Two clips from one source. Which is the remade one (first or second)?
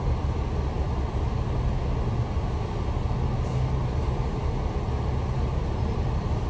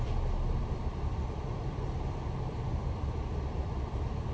second